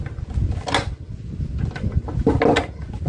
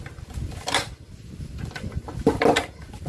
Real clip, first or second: first